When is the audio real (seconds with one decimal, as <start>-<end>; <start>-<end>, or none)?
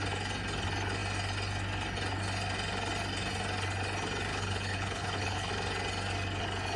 0.0-4.3; 5.5-6.8